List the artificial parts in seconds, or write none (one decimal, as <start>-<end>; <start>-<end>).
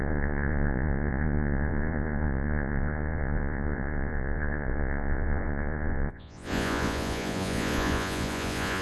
0.0-8.8